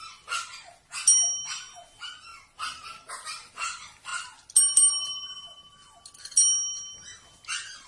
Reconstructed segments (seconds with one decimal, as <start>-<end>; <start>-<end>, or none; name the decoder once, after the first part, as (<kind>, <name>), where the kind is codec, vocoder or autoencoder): none